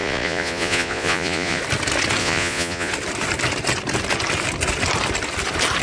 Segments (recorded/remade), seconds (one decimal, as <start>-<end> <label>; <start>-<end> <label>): 0.0-1.6 remade; 1.6-2.2 recorded; 2.2-2.9 remade; 2.9-5.8 recorded